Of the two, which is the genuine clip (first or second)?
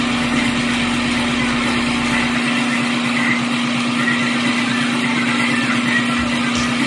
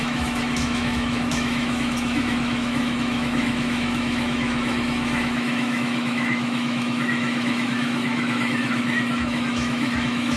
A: first